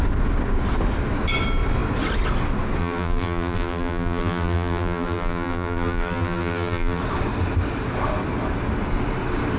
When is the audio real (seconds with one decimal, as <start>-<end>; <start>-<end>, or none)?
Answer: 0.0-2.8; 7.0-9.6